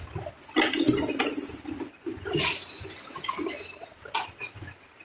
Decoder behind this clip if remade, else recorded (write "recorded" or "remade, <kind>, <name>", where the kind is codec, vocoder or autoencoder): recorded